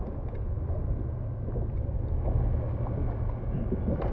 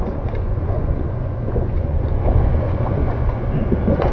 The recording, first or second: first